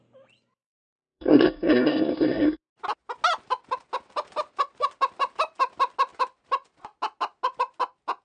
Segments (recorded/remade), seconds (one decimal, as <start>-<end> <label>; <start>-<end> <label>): 0.0-0.7 recorded; 0.7-2.7 remade; 2.7-8.2 recorded